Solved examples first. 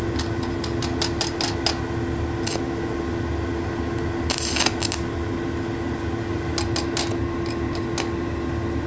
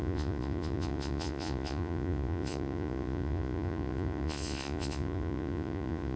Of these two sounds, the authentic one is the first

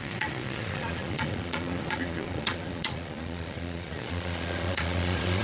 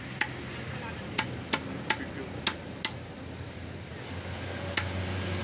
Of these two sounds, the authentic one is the second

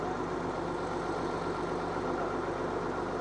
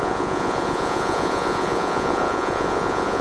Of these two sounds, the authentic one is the first